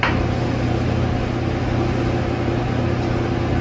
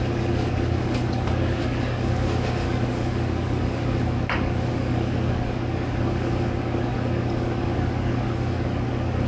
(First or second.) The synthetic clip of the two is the second